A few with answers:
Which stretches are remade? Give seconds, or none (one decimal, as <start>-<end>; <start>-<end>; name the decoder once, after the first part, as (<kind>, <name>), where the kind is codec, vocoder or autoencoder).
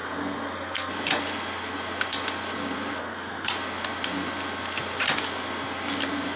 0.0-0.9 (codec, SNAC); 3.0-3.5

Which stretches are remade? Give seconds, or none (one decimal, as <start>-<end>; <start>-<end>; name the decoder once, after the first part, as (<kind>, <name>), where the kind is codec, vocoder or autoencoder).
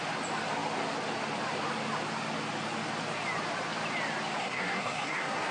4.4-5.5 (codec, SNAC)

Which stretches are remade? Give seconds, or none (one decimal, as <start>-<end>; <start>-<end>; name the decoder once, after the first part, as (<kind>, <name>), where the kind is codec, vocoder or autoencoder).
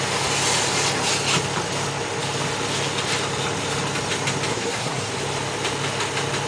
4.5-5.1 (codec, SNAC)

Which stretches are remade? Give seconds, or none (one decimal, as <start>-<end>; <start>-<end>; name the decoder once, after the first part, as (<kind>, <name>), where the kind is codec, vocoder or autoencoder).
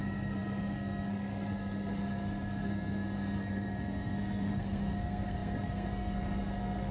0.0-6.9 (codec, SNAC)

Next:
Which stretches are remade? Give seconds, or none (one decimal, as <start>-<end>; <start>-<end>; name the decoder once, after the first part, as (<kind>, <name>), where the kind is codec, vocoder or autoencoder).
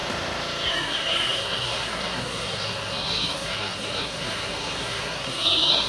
0.7-5.9 (codec, SNAC)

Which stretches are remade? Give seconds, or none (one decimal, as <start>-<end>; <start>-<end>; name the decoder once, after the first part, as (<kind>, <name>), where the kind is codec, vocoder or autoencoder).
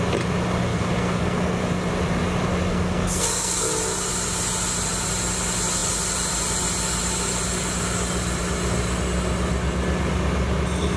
0.7-1.6 (codec, SNAC); 2.7-3.7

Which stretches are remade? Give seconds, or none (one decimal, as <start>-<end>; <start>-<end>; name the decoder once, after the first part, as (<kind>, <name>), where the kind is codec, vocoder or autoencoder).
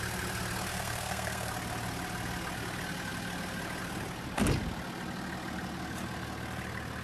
0.7-1.5 (codec, SNAC)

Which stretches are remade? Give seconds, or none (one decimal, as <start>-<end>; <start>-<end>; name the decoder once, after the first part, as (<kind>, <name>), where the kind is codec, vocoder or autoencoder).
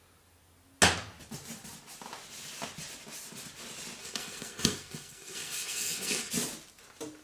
4.0-6.3 (codec, SNAC)